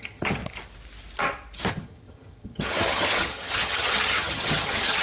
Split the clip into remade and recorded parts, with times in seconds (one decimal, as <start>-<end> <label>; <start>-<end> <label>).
0.0-0.4 remade; 0.4-1.7 recorded; 1.7-5.0 remade